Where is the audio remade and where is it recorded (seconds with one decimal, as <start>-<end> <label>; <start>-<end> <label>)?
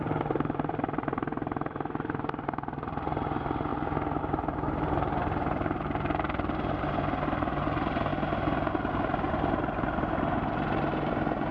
0.0-3.7 remade; 3.7-4.2 recorded; 4.2-8.1 remade; 8.1-8.7 recorded; 8.7-11.5 remade